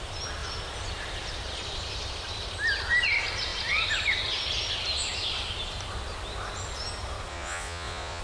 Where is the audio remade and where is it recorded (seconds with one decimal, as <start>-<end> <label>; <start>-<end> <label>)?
0.0-7.3 recorded; 7.3-8.2 remade